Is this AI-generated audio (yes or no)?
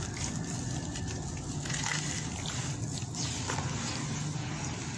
no